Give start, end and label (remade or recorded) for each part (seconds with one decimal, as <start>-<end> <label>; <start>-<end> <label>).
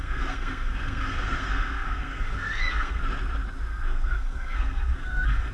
0.0-3.0 remade; 3.0-3.7 recorded; 3.7-5.5 remade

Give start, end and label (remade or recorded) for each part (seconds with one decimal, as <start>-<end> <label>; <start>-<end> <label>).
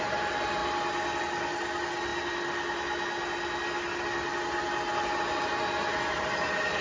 0.0-6.8 recorded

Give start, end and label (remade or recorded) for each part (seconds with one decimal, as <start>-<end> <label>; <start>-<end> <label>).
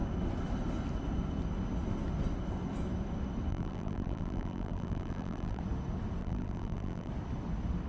0.0-3.5 recorded; 3.5-5.6 remade; 5.6-6.2 recorded; 6.2-7.1 remade; 7.1-7.9 recorded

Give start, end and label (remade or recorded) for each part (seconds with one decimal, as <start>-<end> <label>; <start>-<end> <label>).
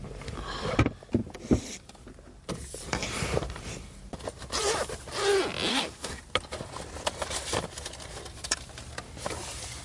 0.0-5.7 recorded; 5.7-6.2 remade; 6.2-9.8 recorded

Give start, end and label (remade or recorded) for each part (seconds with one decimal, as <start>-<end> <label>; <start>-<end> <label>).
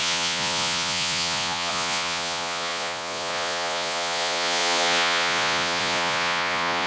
0.0-6.9 remade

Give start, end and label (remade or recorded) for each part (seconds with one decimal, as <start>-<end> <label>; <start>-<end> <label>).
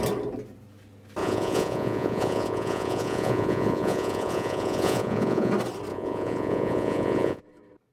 0.0-1.2 recorded; 1.2-5.5 remade; 5.5-5.9 recorded; 5.9-7.4 remade; 7.4-7.9 recorded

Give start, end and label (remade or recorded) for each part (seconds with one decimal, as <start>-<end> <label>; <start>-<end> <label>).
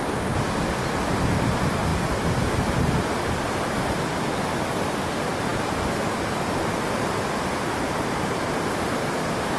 0.0-9.6 recorded